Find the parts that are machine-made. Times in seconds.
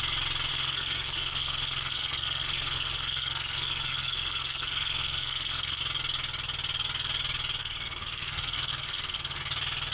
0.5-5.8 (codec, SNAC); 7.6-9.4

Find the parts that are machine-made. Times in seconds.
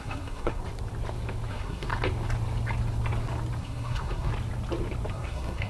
0.0-0.6 (codec, SNAC); 1.5-1.9; 3.6-4.3; 5.1-5.7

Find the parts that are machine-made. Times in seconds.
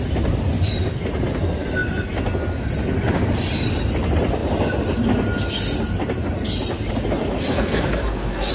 7.5-8.5 (codec, SNAC)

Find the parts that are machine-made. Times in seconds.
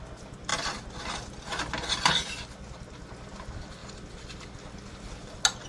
none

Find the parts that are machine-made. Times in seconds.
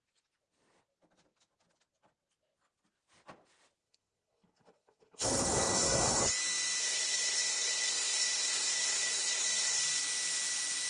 3.8-6.2 (codec, SNAC); 6.8-9.8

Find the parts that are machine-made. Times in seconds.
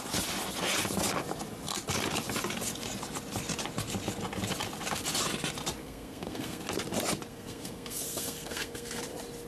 5.8-6.6 (codec, SNAC); 7.3-9.0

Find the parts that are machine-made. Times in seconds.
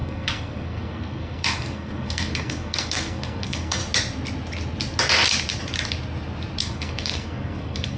0.0-3.8 (codec, SNAC); 6.6-8.0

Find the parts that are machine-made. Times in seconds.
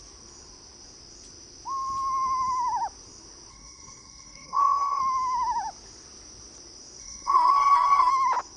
3.5-5.0 (codec, SNAC); 7.0-8.1